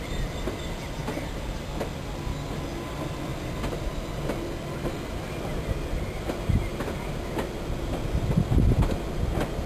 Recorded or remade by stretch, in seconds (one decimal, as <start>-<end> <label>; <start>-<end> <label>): 0.0-1.0 recorded; 1.0-1.7 remade; 1.7-9.7 recorded